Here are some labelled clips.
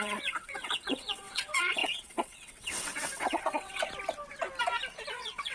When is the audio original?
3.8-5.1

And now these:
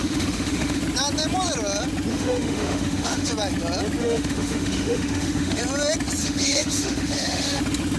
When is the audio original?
0.8-2.1; 3.3-4.0; 5.6-6.2; 7.6-8.0

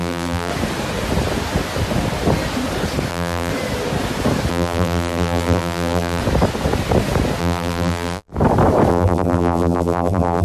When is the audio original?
0.5-3.1; 3.5-4.5; 6.2-7.4; 8.3-8.9